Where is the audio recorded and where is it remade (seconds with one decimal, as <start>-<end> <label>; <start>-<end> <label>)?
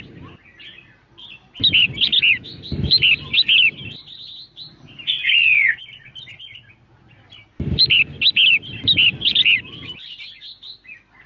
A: 0.0-2.1 recorded; 2.1-2.6 remade; 2.6-11.3 recorded